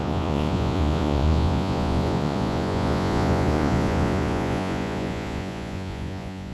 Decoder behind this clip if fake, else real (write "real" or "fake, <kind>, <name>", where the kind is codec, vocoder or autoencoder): fake, vocoder, Vocos